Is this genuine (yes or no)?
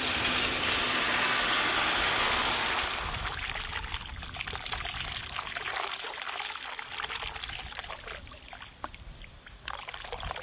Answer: yes